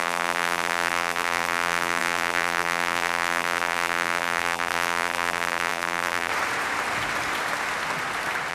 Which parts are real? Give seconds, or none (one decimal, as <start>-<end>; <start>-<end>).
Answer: 6.3-8.5